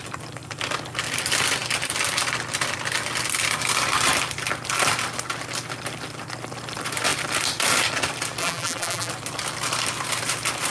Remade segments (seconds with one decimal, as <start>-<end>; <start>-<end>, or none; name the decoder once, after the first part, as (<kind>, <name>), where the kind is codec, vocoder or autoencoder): 8.4-9.1 (vocoder, BigVGAN v2)